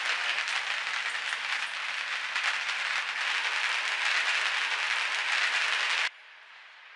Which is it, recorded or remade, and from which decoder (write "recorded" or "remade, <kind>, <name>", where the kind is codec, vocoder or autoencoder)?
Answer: recorded